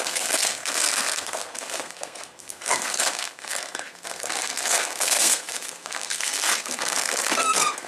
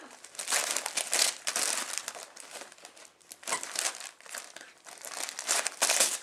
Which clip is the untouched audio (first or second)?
second